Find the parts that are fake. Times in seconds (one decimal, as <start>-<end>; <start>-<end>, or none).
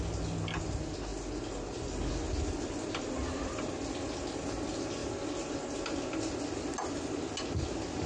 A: none